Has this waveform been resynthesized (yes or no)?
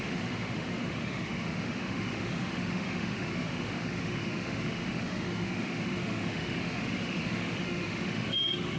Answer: yes